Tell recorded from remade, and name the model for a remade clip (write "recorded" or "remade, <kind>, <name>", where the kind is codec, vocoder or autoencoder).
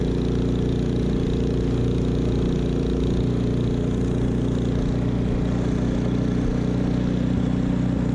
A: recorded